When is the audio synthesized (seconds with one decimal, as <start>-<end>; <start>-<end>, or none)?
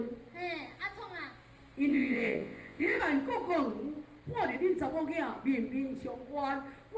1.9-3.0